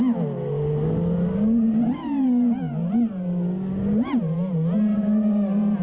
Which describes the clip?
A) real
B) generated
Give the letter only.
A